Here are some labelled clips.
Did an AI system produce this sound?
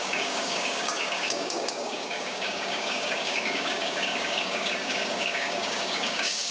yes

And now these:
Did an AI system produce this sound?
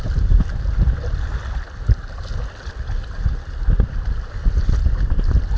no